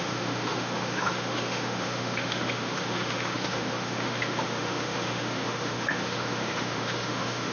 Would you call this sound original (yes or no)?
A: no